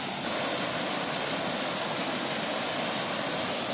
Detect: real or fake real